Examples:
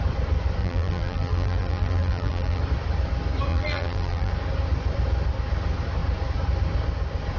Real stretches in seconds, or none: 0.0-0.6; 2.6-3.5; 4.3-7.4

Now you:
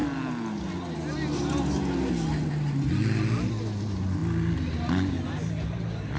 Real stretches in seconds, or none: 0.0-6.2

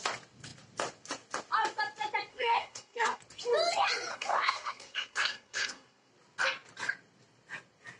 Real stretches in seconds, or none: 0.0-2.3; 3.2-4.1; 6.1-8.0

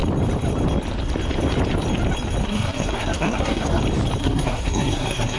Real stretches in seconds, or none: 0.0-2.4; 3.8-4.2

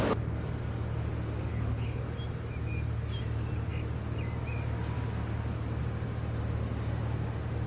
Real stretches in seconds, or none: 0.0-1.5; 2.0-7.7

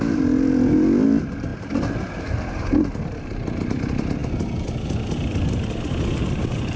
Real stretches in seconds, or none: 0.0-6.8

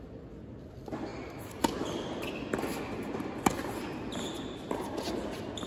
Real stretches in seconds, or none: 0.0-5.7

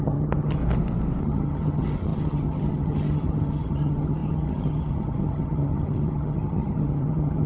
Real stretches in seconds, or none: 0.6-1.2